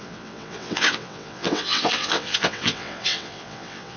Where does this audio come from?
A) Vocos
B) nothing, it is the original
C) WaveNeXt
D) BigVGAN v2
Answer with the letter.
C